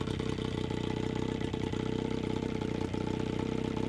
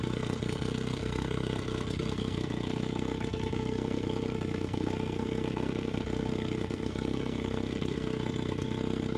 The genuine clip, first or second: first